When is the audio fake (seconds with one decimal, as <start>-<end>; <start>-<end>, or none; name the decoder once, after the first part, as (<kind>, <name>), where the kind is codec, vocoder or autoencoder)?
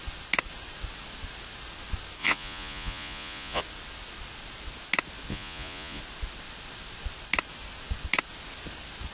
2.2-3.6 (vocoder, Vocos); 5.3-6.0